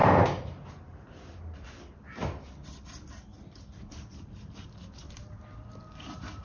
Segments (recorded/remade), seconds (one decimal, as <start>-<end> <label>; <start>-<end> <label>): 0.0-6.4 recorded